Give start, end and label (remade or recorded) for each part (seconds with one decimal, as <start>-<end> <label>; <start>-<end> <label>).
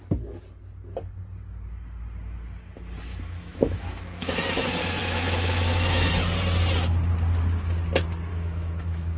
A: 0.0-3.1 recorded; 3.1-4.3 remade; 4.3-5.0 recorded; 5.0-6.1 remade; 6.1-8.3 recorded; 8.3-9.2 remade